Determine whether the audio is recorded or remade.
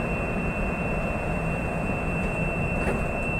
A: remade